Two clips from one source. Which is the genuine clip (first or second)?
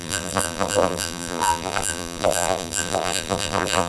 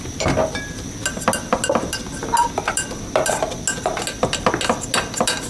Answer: second